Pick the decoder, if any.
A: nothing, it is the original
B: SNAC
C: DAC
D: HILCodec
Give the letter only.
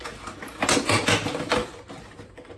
A